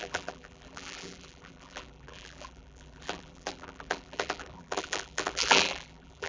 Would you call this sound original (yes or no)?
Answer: no